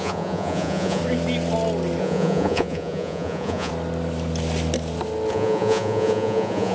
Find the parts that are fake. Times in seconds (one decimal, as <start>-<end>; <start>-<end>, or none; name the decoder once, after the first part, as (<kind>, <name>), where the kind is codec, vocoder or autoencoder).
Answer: 0.0-1.0 (vocoder, Vocos); 2.0-3.7; 5.3-6.7